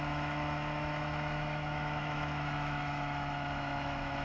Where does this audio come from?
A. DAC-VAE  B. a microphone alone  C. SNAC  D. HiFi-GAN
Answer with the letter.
A